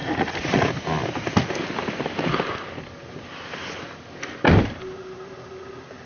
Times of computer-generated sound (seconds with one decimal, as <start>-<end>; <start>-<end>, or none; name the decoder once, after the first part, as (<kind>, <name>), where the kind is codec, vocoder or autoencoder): 0.0-0.7 (vocoder, Vocos)